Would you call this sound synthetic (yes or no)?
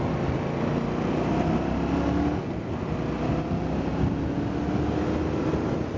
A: no